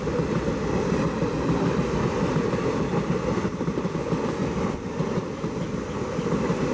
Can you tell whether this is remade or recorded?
recorded